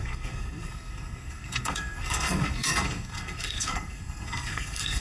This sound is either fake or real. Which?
fake